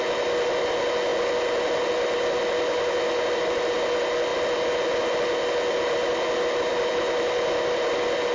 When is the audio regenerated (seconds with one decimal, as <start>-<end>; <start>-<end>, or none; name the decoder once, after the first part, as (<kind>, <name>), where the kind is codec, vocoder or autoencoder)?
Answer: none